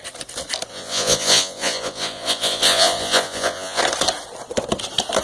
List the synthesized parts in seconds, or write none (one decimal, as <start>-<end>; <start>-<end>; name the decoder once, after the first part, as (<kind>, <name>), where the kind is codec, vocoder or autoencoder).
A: 0.7-3.8 (vocoder, Vocos)